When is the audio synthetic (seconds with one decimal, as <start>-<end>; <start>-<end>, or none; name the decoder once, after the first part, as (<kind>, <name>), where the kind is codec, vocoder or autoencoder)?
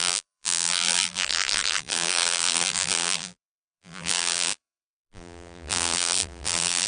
0.0-6.9 (vocoder, BigVGAN v2)